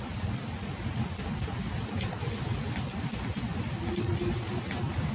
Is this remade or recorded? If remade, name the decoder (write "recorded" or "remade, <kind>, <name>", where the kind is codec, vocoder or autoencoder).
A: recorded